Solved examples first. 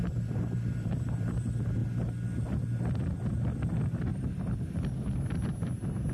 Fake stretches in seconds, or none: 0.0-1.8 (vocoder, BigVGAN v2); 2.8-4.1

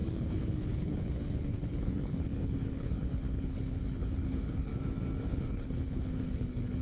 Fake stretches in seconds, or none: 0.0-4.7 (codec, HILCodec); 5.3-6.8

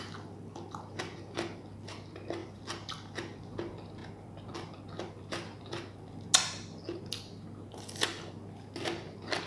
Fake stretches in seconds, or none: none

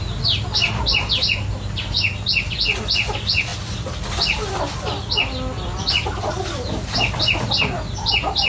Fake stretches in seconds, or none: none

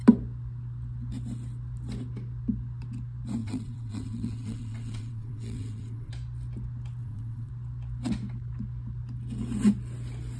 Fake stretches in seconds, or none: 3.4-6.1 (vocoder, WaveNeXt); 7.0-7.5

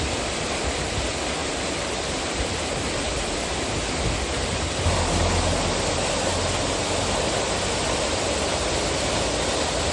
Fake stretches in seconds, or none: 1.4-3.7 (vocoder, BigVGAN v2)